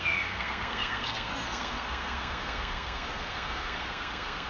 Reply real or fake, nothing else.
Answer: fake